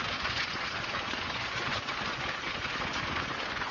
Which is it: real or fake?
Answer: fake